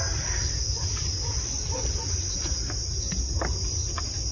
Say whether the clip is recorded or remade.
recorded